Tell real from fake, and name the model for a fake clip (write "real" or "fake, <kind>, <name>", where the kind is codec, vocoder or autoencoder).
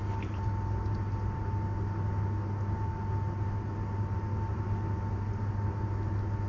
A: real